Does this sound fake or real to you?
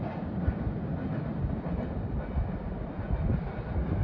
real